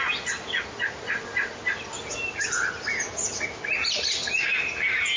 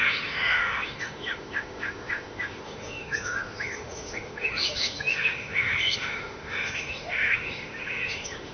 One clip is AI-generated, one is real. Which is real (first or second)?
first